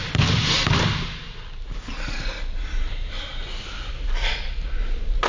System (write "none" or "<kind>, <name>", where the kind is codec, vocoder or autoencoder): none